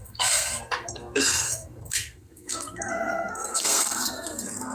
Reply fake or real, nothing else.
fake